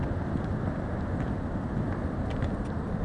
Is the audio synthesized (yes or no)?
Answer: no